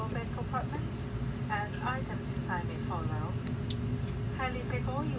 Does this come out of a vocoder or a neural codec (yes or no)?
no